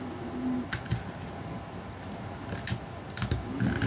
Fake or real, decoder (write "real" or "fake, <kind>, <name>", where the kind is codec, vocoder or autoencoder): real